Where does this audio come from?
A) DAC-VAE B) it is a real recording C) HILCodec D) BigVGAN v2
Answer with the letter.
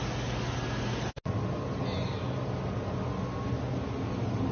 B